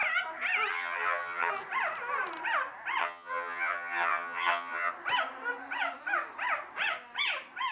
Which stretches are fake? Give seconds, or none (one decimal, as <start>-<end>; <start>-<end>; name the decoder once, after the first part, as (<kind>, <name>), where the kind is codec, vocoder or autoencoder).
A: 0.7-1.5 (vocoder, HiFi-GAN); 3.0-4.9